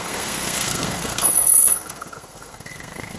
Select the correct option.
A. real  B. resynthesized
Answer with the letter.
B